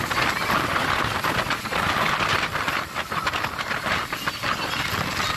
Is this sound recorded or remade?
remade